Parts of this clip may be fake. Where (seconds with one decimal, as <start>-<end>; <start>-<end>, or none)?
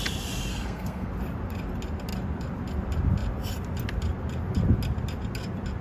0.5-1.1